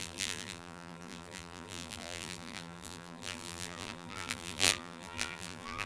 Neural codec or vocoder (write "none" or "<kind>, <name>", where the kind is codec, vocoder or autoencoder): vocoder, BigVGAN v2